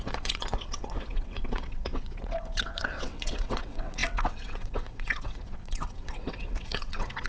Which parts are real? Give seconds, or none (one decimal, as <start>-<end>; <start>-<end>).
none